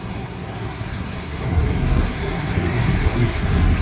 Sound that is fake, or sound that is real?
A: fake